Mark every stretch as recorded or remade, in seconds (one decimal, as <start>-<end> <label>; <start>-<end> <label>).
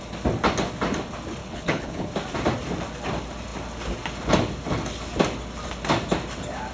0.0-1.4 recorded; 1.4-2.1 remade; 2.1-6.7 recorded